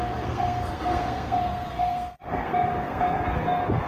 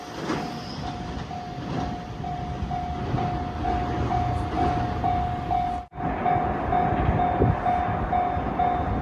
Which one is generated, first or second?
first